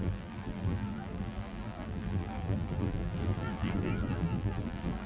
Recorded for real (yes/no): no